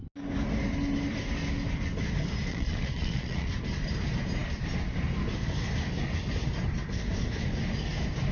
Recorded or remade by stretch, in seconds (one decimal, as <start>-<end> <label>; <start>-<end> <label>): 0.0-2.5 recorded; 2.5-3.5 remade; 3.5-8.3 recorded